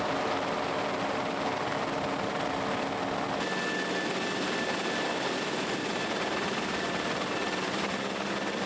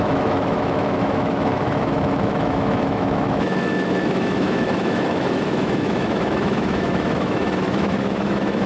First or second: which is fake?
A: second